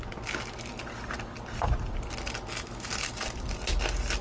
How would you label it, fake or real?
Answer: real